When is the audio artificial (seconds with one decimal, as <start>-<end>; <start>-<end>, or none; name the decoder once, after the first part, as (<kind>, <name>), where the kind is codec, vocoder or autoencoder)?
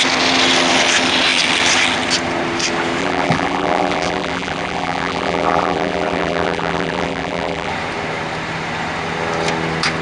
3.0-7.7 (vocoder, BigVGAN v2)